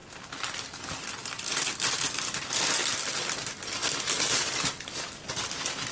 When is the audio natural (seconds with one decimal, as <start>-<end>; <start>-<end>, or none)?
0.0-5.9